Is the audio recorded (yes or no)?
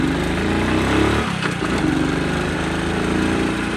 yes